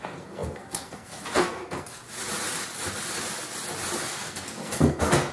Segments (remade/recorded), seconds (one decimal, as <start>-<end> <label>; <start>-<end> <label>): 0.0-2.0 remade; 2.0-4.1 recorded; 4.1-5.3 remade